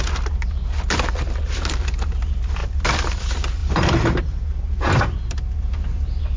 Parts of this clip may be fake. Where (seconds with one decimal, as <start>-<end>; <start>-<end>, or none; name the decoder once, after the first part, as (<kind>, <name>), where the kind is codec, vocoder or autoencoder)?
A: 2.6-3.2 (vocoder, BigVGAN v2); 3.6-4.2